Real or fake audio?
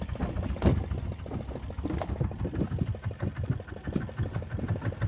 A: real